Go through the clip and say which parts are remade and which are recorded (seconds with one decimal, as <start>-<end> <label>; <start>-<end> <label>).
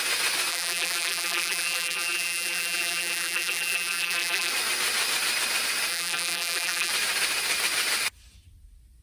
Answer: 0.0-0.5 recorded; 0.5-4.5 remade; 4.5-5.9 recorded; 5.9-6.9 remade; 6.9-9.0 recorded